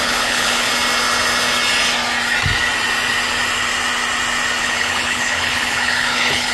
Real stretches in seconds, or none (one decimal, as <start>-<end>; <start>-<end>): 0.7-4.6